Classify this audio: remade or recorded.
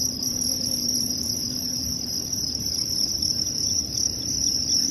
remade